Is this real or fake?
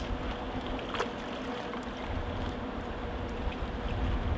real